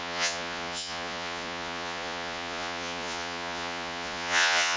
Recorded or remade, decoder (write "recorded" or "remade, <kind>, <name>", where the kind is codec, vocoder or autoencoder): remade, vocoder, Vocos